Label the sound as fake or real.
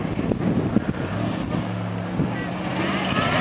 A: real